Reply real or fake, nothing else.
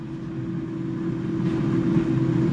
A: real